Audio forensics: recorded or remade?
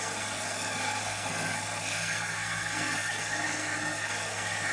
remade